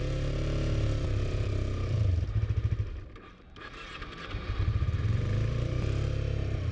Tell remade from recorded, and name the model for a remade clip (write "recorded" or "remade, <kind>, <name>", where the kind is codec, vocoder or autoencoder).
remade, vocoder, BigVGAN v2